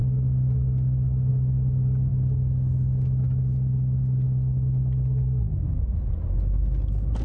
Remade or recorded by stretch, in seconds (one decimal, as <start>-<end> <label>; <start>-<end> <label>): 0.0-7.2 recorded